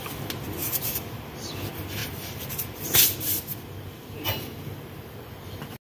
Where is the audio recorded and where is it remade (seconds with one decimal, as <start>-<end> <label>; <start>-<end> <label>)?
0.0-0.6 recorded; 0.6-1.3 remade; 1.3-2.0 recorded; 2.0-2.8 remade; 2.8-5.8 recorded